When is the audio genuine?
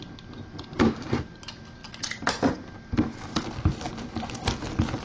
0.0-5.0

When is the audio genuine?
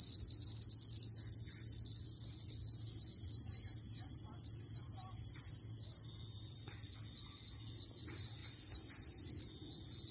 0.0-10.1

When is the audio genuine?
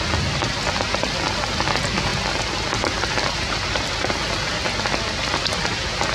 0.0-6.1